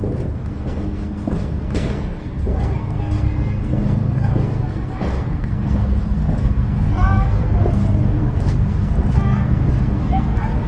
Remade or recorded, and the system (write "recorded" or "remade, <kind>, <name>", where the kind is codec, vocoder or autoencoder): remade, codec, SNAC